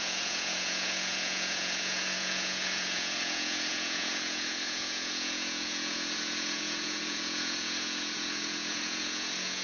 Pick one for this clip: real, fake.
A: fake